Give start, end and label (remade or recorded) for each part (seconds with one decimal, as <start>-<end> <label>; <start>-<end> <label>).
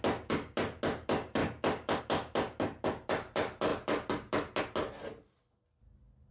0.0-6.3 recorded